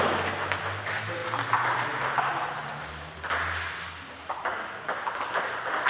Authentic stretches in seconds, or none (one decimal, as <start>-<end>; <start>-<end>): 0.0-5.9